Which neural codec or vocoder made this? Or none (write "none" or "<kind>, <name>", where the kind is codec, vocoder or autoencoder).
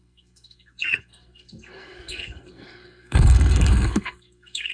codec, SNAC